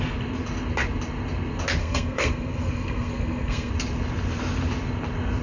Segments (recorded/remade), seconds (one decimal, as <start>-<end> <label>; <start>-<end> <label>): 0.0-1.8 recorded; 1.8-3.7 remade; 3.7-5.4 recorded